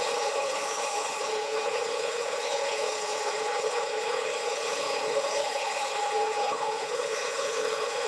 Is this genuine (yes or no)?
no